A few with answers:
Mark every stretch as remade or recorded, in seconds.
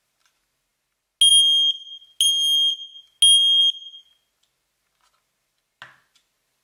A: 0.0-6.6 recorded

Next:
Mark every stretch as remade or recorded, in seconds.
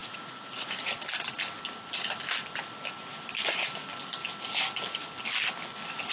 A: 0.0-0.9 remade; 0.9-6.1 recorded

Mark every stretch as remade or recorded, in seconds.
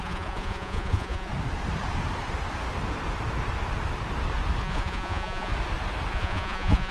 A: 0.0-1.3 remade; 1.3-4.6 recorded; 4.6-5.5 remade; 5.5-6.1 recorded; 6.1-6.9 remade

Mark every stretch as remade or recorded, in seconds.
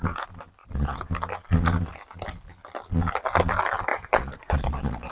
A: 0.0-0.6 recorded; 0.6-1.1 remade; 1.1-3.9 recorded; 3.9-5.1 remade